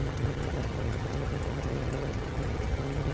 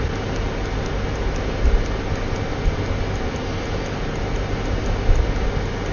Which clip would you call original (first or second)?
second